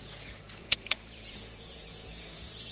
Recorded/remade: remade